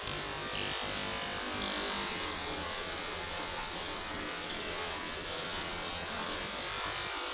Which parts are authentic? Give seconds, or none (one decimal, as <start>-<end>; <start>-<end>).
0.0-2.1; 6.4-7.3